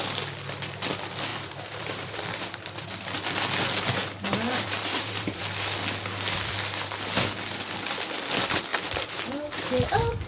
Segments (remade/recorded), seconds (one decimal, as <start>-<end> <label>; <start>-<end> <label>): 0.0-1.3 recorded; 1.3-2.9 remade; 2.9-4.3 recorded; 4.3-5.4 remade; 5.4-8.7 recorded; 8.7-9.9 remade; 9.9-10.3 recorded